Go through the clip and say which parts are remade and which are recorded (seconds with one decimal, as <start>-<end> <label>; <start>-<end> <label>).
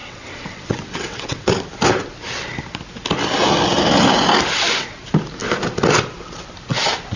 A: 0.0-1.5 remade; 1.5-7.2 recorded